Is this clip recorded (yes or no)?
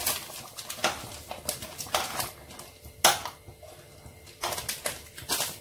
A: yes